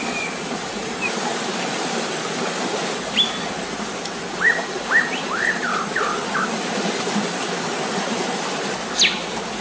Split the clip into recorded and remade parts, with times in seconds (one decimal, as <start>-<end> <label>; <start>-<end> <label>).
0.0-4.5 recorded; 4.5-5.6 remade; 5.6-9.6 recorded